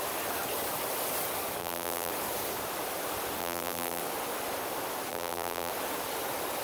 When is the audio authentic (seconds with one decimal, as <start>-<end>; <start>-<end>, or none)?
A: 0.0-1.6; 2.1-3.4; 4.0-5.1; 5.7-6.6

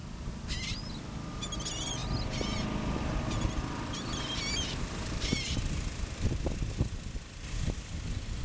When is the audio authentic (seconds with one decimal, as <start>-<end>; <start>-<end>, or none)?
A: 0.0-8.4

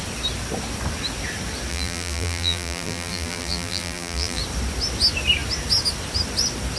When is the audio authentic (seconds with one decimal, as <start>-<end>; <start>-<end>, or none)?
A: 0.0-1.7; 4.4-6.8

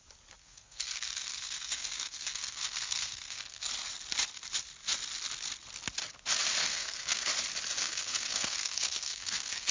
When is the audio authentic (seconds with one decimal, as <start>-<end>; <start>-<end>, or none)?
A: 0.0-0.4; 3.7-6.6; 7.3-7.8

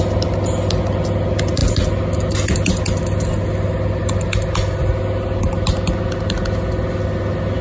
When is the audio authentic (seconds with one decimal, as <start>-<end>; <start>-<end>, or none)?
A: 0.0-7.6

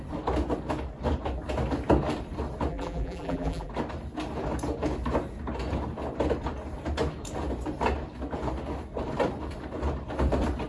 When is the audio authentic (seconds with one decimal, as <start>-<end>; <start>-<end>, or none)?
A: 0.0-2.7; 3.7-10.7